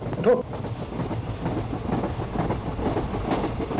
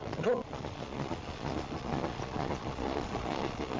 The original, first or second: first